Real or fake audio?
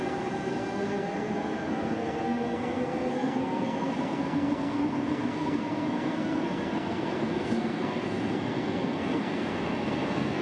fake